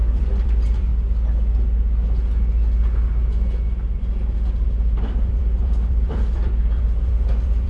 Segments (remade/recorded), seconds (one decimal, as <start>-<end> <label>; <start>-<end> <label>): 0.0-0.9 remade; 0.9-5.0 recorded; 5.0-7.7 remade

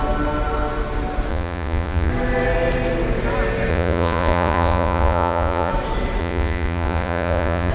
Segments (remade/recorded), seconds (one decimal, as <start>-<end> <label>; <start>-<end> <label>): 0.0-1.3 recorded; 1.3-2.1 remade; 2.1-3.7 recorded; 3.7-5.7 remade; 5.7-6.2 recorded; 6.2-7.7 remade